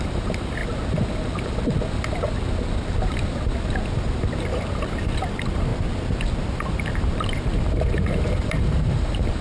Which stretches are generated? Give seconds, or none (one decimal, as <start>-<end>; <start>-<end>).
0.0-0.6; 4.4-5.7; 6.5-9.4